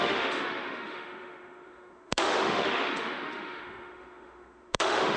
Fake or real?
fake